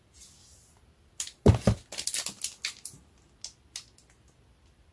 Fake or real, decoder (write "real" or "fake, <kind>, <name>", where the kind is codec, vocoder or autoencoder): real